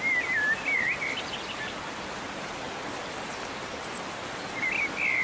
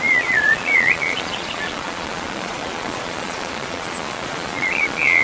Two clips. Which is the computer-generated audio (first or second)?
second